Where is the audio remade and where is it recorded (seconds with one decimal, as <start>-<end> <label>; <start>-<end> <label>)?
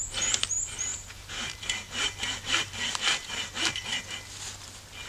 0.0-0.9 recorded; 0.9-4.0 remade; 4.0-5.1 recorded